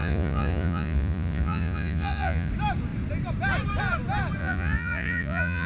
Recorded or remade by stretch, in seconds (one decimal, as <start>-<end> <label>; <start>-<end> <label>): 0.0-2.5 remade; 2.5-4.4 recorded; 4.4-5.7 remade